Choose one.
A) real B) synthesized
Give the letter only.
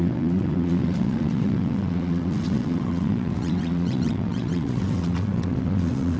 B